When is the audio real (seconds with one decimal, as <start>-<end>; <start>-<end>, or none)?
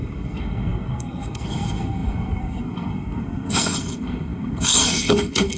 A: none